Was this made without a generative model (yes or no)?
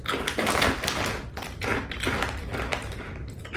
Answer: yes